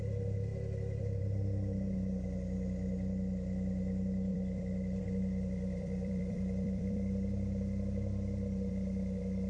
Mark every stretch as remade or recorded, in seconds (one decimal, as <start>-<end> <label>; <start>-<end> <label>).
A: 0.0-0.5 recorded; 0.5-1.2 remade; 1.2-4.3 recorded; 4.3-8.7 remade; 8.7-9.5 recorded

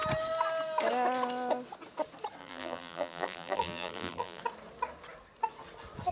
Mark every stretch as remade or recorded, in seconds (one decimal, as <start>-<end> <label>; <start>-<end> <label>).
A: 0.0-2.4 recorded; 2.4-4.4 remade; 4.4-6.1 recorded

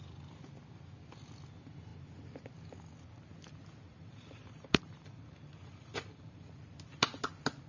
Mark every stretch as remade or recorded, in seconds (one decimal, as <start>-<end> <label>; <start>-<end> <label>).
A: 0.0-3.9 recorded; 3.9-6.6 remade; 6.6-7.7 recorded

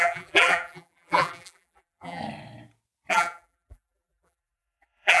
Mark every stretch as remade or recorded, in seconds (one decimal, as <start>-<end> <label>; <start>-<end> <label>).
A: 0.0-2.2 remade; 2.2-3.1 recorded; 3.1-5.2 remade

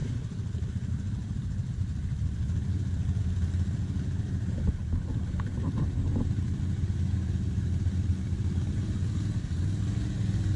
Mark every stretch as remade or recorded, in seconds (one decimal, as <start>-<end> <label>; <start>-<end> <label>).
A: 0.0-8.1 remade; 8.1-10.6 recorded

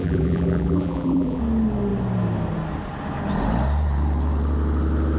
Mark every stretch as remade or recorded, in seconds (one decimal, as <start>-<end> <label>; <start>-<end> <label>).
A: 0.0-1.4 remade; 1.4-5.2 recorded

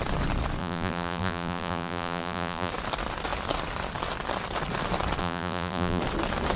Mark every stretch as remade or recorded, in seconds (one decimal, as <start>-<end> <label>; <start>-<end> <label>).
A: 0.0-0.6 recorded; 0.6-2.7 remade; 2.7-5.2 recorded; 5.2-6.0 remade; 6.0-6.6 recorded